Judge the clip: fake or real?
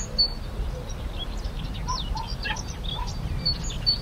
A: real